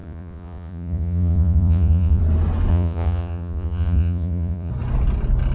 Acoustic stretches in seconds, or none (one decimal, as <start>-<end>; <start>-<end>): 2.2-2.7; 4.7-5.5